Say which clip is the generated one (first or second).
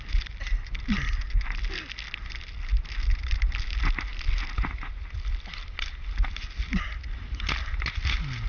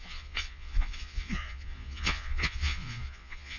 second